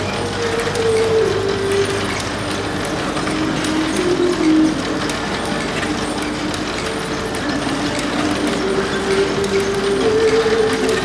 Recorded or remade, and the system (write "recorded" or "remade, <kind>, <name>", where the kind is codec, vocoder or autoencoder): recorded